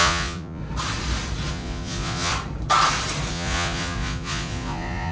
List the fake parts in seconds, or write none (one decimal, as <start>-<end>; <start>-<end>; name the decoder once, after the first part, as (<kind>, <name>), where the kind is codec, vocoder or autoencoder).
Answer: 0.0-0.6 (vocoder, Vocos); 1.5-2.3; 3.3-5.1